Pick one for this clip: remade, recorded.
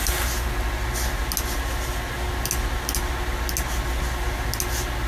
recorded